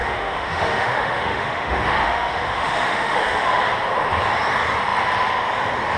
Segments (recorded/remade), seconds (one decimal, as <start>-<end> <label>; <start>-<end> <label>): 0.0-3.6 remade; 3.6-6.0 recorded